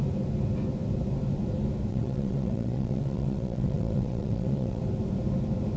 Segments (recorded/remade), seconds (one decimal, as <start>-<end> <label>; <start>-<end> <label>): 0.0-1.9 recorded; 1.9-4.8 remade; 4.8-5.8 recorded